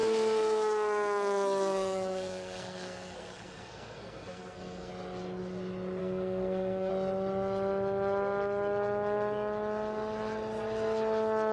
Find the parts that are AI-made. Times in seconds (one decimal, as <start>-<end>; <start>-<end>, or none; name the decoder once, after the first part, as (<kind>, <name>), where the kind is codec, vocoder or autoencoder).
0.0-4.9 (codec, SNAC); 6.0-6.9